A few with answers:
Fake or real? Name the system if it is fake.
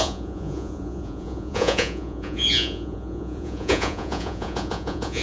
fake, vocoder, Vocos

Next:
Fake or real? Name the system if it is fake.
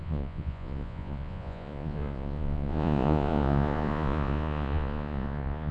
fake, vocoder, Vocos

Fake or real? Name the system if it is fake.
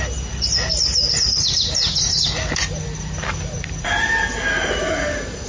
real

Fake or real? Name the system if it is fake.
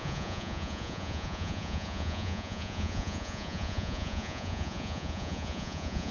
fake, vocoder, Vocos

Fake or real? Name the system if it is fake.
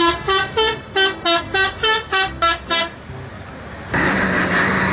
real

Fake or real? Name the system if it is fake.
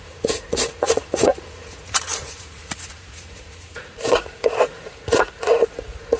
fake, vocoder, Vocos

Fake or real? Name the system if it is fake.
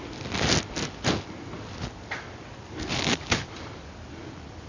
real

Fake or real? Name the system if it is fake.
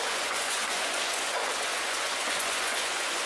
fake, vocoder, Vocos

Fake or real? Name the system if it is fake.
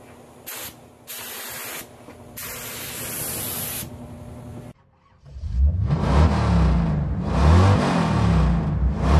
real